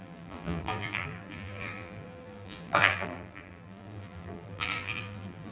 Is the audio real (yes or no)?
no